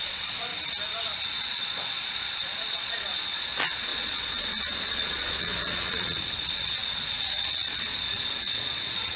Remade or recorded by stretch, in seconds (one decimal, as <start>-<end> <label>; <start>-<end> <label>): 0.0-0.5 remade; 0.5-1.3 recorded; 1.3-9.2 remade